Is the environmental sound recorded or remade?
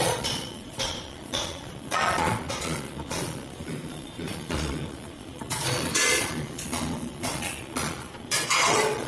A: remade